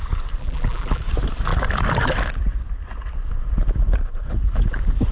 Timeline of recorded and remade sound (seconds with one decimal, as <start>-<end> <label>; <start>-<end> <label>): 0.0-0.4 recorded; 0.4-1.0 remade; 1.0-5.1 recorded